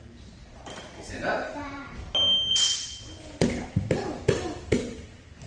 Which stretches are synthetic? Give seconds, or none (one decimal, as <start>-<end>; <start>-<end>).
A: 0.0-1.8; 4.2-5.5